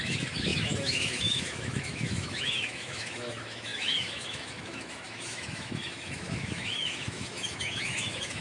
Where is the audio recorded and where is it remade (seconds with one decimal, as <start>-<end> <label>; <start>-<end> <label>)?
0.0-8.4 remade